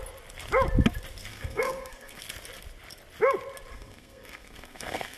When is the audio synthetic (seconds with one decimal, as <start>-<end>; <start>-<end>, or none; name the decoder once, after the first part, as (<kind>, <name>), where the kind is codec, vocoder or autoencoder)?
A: 1.3-2.2 (codec, SNAC); 3.7-5.2